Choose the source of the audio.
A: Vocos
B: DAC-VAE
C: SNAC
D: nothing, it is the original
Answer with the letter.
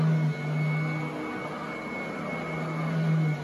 D